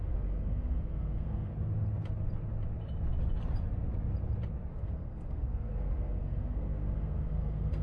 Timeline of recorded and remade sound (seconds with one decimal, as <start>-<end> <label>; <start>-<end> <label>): 0.0-1.5 remade; 1.5-4.7 recorded; 4.7-7.8 remade